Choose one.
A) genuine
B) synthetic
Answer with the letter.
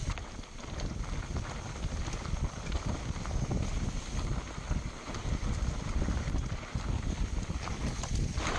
A